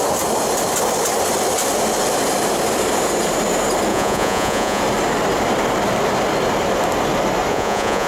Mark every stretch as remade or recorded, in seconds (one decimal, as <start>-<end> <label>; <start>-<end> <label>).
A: 0.0-3.9 recorded; 3.9-4.8 remade; 4.8-7.5 recorded; 7.5-8.1 remade